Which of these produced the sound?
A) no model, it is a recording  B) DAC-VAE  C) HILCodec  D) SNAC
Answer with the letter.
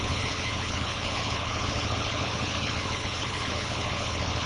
C